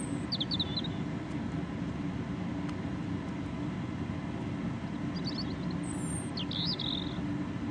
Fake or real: real